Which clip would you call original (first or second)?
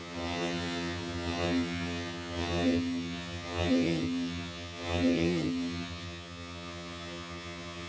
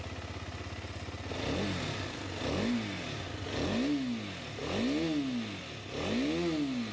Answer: second